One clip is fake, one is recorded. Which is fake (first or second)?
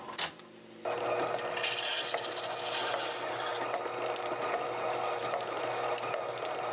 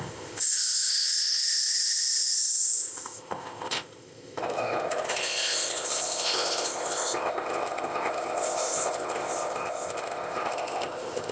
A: second